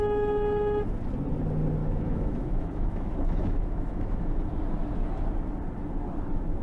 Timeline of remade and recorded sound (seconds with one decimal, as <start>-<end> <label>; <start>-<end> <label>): 0.0-1.8 recorded; 1.8-4.5 remade; 4.5-6.6 recorded